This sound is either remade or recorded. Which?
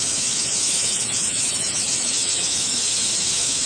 remade